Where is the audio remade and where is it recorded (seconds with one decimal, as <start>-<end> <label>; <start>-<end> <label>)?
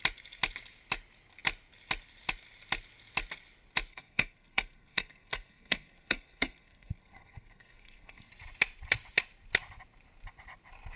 0.0-3.9 recorded; 3.9-8.3 remade; 8.3-11.0 recorded